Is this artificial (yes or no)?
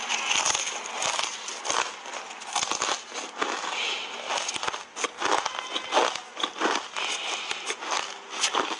no